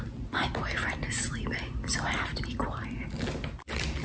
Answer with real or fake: real